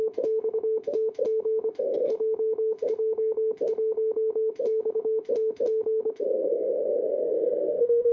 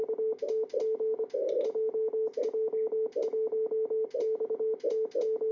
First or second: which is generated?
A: first